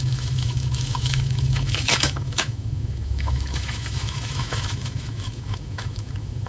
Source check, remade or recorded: remade